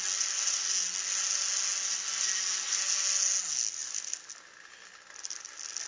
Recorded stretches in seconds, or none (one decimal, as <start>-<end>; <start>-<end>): 0.0-5.9